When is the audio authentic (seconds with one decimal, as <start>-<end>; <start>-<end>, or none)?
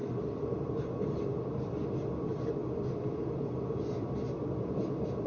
0.0-4.4